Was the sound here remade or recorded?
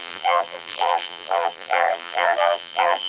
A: remade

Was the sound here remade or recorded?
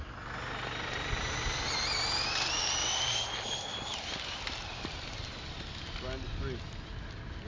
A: recorded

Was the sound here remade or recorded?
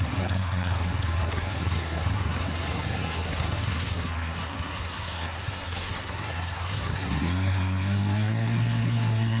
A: remade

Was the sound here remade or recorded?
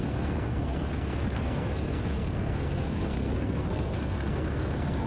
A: remade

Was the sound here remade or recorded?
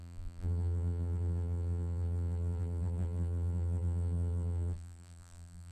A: remade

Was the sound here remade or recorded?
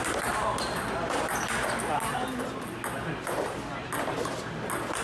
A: recorded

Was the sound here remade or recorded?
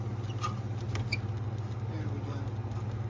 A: recorded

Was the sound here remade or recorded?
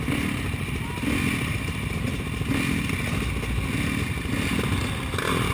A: recorded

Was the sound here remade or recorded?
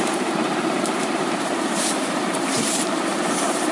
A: remade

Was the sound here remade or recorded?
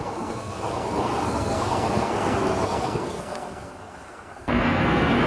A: remade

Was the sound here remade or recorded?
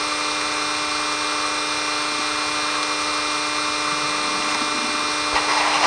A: recorded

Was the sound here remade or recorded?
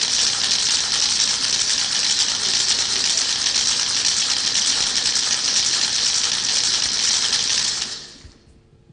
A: recorded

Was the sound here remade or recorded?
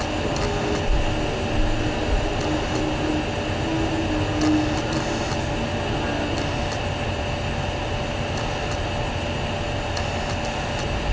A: recorded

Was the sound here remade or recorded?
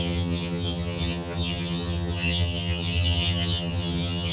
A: remade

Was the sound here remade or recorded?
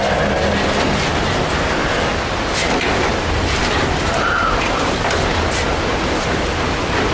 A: recorded